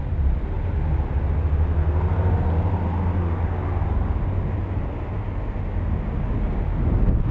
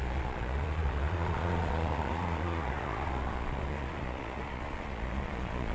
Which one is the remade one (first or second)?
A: second